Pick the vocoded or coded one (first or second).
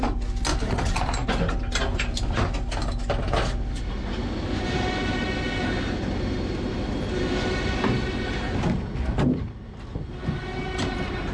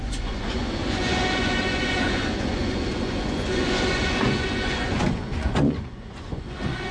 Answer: second